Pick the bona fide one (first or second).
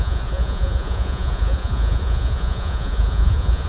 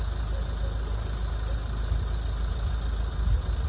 second